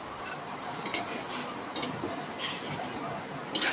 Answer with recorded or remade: recorded